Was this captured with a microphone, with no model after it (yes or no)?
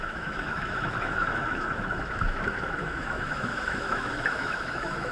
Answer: no